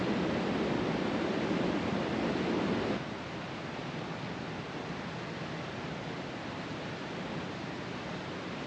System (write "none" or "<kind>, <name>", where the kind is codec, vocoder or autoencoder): none